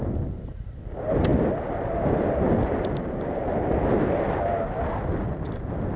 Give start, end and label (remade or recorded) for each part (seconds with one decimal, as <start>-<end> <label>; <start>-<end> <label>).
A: 0.0-6.0 recorded